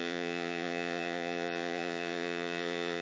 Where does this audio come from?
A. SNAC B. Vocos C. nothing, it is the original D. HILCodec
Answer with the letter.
B